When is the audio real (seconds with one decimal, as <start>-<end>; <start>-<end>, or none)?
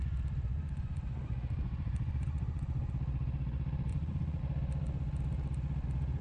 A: 0.0-0.5; 2.9-3.9; 4.4-6.2